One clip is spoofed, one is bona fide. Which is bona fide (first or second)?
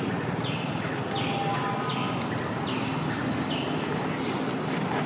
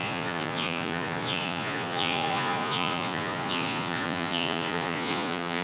first